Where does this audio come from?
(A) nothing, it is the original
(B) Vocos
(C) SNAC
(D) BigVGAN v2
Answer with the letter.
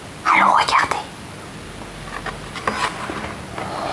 A